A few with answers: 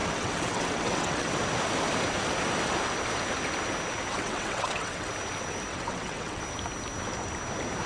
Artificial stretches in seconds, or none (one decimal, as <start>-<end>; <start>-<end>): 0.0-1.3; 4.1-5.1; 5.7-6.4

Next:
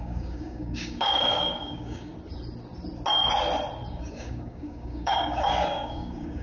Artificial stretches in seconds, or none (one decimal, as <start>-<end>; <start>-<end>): 0.0-2.1; 3.9-6.4

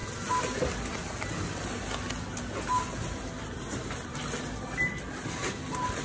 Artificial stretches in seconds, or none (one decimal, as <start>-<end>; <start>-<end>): none

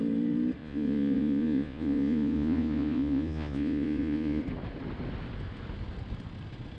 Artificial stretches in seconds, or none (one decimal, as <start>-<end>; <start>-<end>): 0.6-4.4

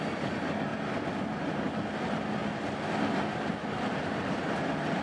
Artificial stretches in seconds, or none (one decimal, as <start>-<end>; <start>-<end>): none

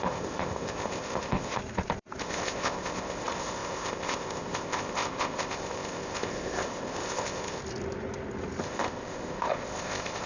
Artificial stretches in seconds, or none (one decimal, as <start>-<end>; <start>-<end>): 0.0-1.6; 2.2-7.6; 8.6-10.3

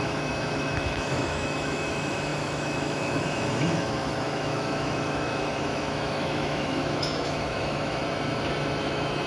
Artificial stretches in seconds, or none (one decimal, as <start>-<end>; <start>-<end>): 0.0-8.0; 8.8-9.3

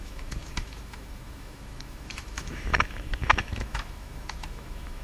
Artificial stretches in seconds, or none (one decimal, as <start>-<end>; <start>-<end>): 0.0-5.0